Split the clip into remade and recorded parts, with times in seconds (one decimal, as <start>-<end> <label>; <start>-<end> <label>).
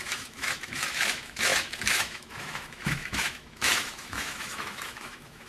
0.0-5.5 remade